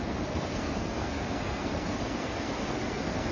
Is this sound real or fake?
fake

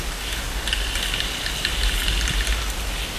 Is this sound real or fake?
real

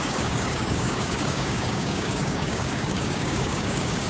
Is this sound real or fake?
fake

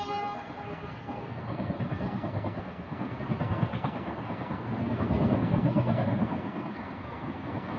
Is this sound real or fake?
fake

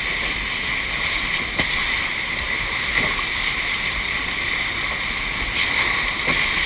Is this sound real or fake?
real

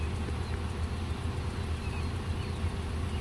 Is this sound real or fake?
real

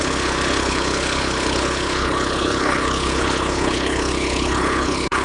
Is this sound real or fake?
fake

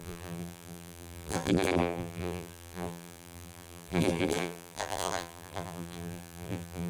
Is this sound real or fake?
fake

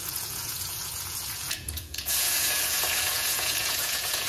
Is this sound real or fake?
fake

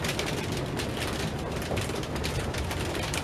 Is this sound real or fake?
fake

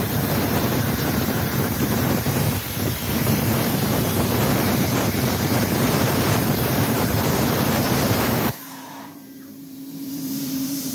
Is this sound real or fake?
fake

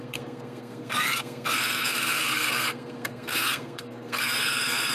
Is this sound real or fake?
fake